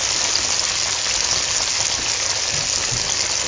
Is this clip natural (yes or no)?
yes